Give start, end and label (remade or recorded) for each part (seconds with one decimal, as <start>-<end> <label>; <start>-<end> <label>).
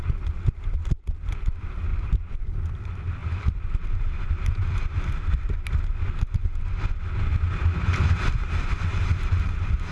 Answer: 0.0-1.9 recorded; 1.9-2.4 remade; 2.4-3.2 recorded; 3.2-5.3 remade; 5.3-8.9 recorded; 8.9-9.9 remade